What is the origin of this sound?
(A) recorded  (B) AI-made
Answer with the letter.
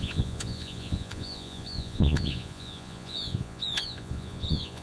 B